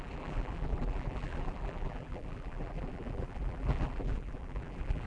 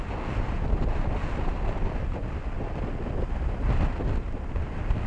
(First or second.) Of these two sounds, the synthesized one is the first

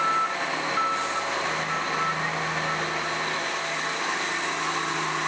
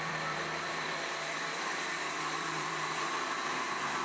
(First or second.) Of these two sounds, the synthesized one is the second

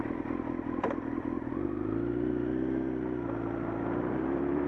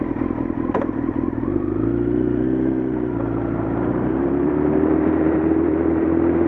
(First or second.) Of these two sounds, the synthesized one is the second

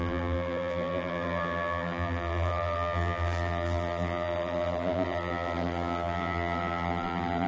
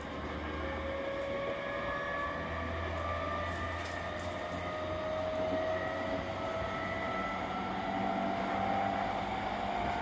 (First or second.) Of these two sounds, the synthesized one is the first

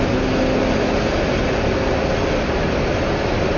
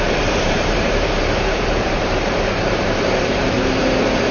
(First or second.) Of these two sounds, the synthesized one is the second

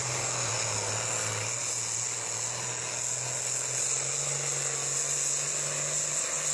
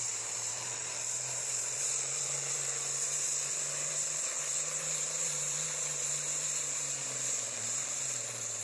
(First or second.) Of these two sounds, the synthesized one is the second